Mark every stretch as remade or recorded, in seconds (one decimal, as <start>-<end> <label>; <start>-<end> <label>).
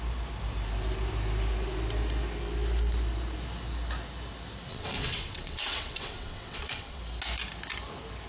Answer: 0.0-4.7 recorded; 4.7-7.0 remade; 7.0-8.3 recorded